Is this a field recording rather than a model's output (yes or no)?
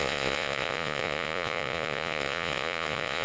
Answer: no